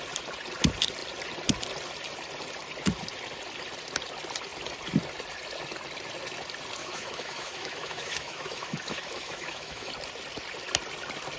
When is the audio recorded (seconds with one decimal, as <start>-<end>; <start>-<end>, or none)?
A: 0.0-6.8; 9.9-11.4